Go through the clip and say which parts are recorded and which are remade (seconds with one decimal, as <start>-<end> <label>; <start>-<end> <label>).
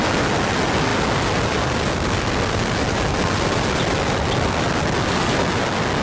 0.0-6.0 recorded